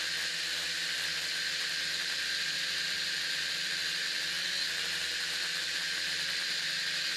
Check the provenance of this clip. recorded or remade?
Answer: recorded